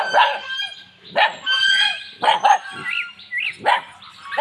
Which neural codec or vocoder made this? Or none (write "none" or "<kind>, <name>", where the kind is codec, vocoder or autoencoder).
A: vocoder, BigVGAN v2